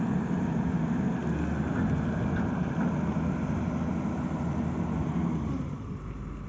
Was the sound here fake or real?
real